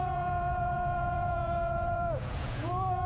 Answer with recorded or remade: remade